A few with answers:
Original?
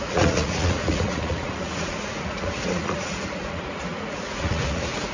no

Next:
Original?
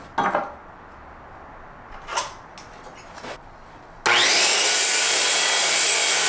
yes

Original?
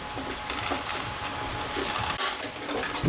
yes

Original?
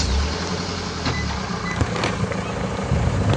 yes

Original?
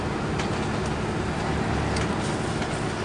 yes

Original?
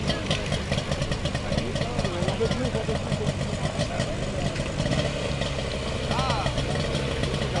yes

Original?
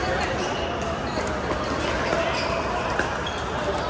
yes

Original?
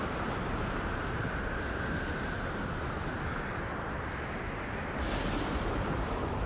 yes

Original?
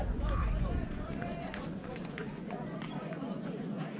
no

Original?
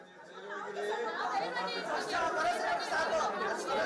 yes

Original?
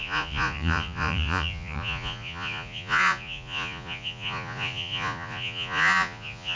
no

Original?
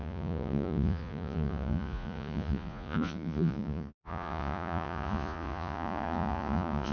no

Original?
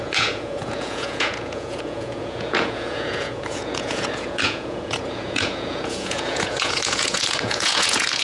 no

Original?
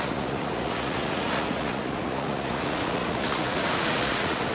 no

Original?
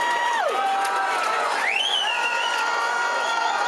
no